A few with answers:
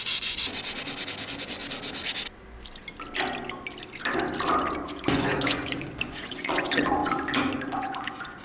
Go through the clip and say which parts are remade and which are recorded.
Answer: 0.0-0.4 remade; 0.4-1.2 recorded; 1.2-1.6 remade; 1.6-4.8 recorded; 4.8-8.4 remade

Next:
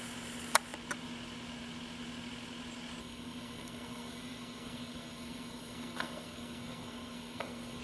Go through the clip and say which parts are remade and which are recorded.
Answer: 0.0-3.0 recorded; 3.0-7.8 remade

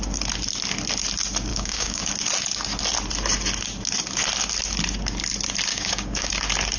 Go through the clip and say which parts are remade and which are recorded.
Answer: 0.0-1.5 recorded; 1.5-2.1 remade; 2.1-5.7 recorded; 5.7-6.3 remade; 6.3-6.8 recorded

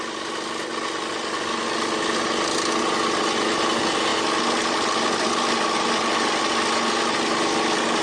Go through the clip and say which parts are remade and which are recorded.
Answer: 0.0-8.0 recorded